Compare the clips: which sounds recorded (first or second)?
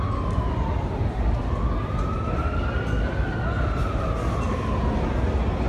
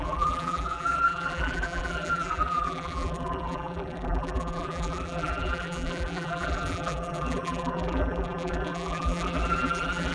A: first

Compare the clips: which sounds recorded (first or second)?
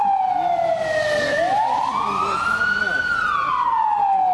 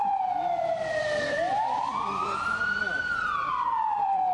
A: first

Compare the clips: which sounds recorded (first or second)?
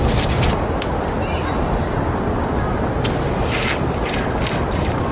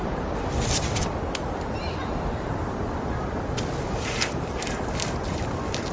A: first